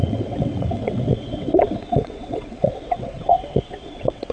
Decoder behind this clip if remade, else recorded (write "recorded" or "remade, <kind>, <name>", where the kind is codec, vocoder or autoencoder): remade, vocoder, WaveNeXt